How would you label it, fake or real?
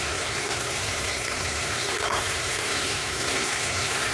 fake